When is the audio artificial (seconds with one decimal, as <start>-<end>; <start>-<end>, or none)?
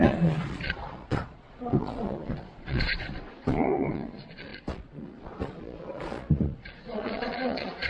0.0-7.9